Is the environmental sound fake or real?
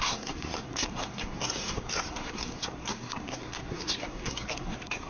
fake